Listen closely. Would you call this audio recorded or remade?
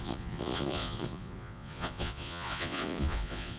remade